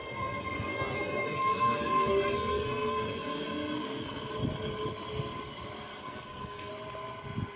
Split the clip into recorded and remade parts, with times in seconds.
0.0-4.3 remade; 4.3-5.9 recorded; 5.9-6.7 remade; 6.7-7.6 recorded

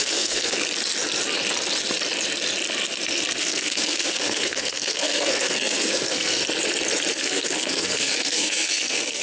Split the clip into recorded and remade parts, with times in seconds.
0.0-0.6 remade; 0.6-3.4 recorded; 3.4-6.4 remade; 6.4-7.1 recorded; 7.1-9.2 remade

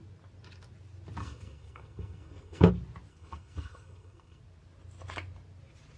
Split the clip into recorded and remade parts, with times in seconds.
0.0-1.2 recorded; 1.2-2.7 remade; 2.7-3.1 recorded; 3.1-4.4 remade; 4.4-6.0 recorded

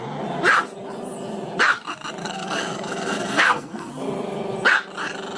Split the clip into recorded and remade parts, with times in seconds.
0.0-2.2 recorded; 2.2-3.9 remade; 3.9-5.4 recorded

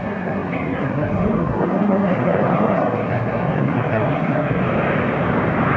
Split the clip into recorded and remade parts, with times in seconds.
0.0-4.6 remade; 4.6-5.8 recorded

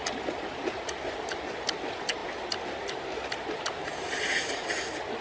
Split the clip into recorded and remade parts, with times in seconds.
0.0-5.2 recorded